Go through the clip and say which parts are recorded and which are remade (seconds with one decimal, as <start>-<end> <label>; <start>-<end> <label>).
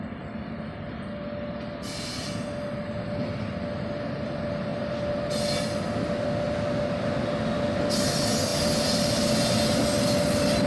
0.0-10.7 recorded